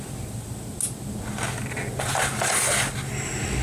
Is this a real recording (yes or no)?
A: yes